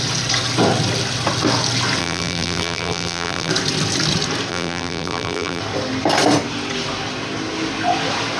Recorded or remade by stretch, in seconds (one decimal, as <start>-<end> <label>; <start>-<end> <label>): 0.0-2.0 recorded; 2.0-3.5 remade; 3.5-4.5 recorded; 4.5-5.6 remade; 5.6-8.4 recorded